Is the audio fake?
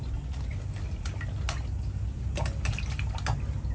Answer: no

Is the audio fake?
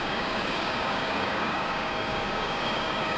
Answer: yes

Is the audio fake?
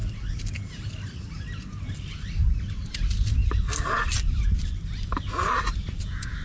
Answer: no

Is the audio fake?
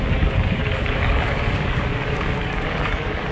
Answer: yes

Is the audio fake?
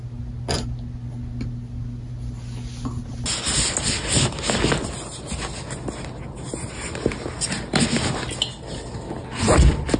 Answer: no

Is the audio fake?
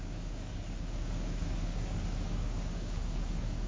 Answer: yes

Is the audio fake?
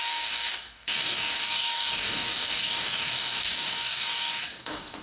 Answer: yes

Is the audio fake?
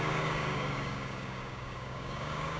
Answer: yes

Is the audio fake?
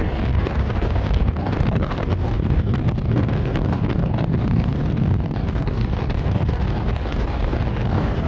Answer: yes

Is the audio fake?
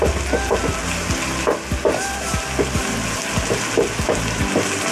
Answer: no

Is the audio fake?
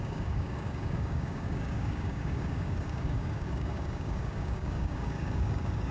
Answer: yes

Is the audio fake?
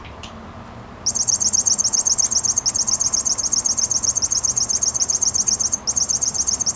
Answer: no